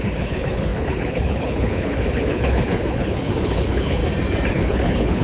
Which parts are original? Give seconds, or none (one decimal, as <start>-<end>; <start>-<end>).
4.0-4.5